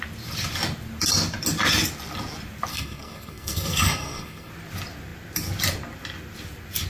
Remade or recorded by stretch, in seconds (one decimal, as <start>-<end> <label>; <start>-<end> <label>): 0.0-2.7 recorded; 2.7-4.5 remade; 4.5-6.9 recorded